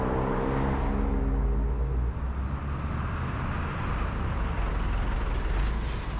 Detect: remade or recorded recorded